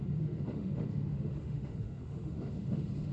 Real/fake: fake